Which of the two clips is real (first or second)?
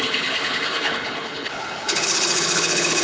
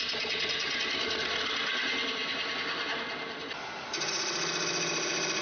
second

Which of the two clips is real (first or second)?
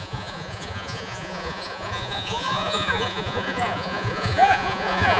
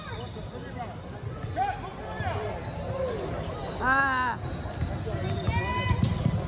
second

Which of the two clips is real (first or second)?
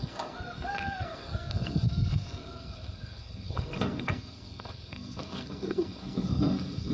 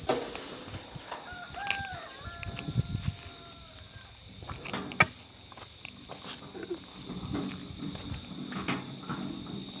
second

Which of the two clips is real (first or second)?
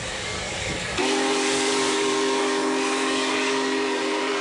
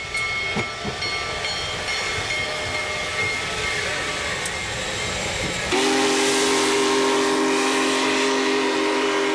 second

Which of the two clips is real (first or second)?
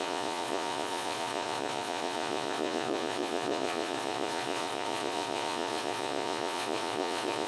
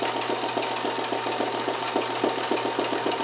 second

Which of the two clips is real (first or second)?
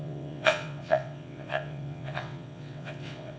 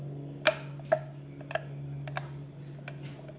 second